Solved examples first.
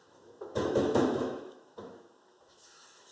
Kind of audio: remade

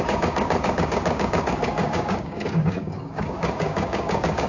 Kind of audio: remade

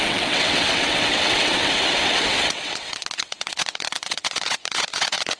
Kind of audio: remade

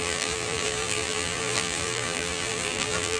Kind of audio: remade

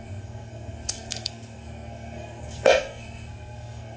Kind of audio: remade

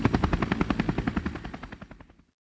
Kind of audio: recorded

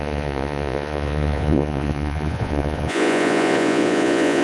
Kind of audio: remade